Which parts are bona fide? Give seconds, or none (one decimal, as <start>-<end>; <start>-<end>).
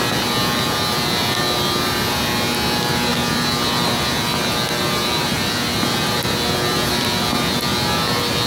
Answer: 0.0-8.5